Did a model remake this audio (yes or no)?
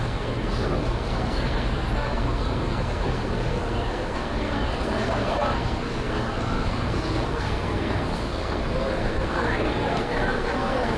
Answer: yes